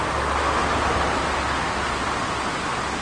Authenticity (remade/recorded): recorded